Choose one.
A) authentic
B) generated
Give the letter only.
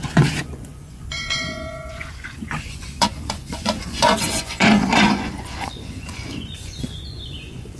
B